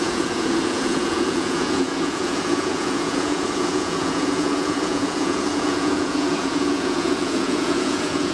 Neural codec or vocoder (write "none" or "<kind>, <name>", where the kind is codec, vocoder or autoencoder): vocoder, Vocos